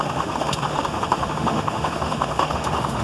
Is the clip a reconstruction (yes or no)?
yes